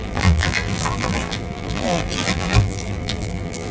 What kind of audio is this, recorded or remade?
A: remade